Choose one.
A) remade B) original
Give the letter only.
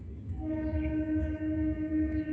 A